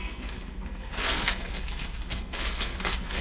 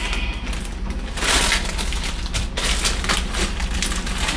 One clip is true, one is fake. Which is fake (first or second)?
first